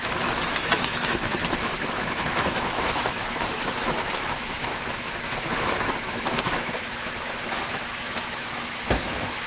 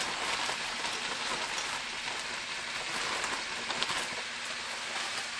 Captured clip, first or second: second